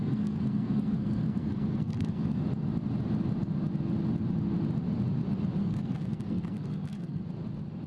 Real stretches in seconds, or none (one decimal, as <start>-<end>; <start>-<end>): 2.4-5.6; 7.2-7.9